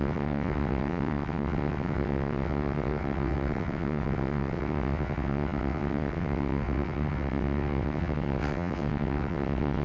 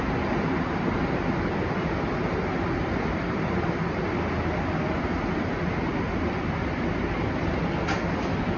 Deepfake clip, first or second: first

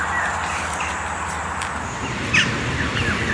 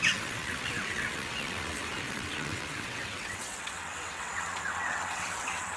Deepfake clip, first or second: second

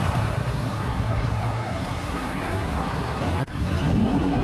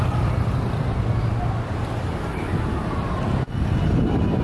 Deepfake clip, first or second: first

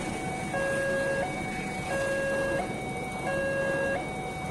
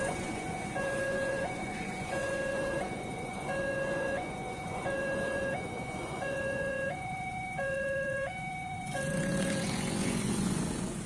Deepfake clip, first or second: second